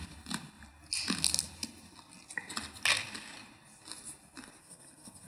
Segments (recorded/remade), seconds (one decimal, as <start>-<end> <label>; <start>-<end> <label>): 0.0-4.6 recorded; 4.6-5.3 remade